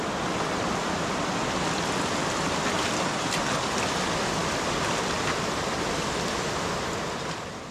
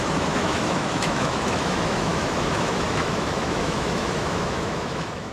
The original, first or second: first